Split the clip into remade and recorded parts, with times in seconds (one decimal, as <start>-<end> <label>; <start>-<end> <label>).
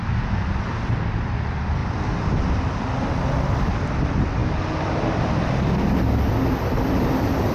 0.0-7.5 recorded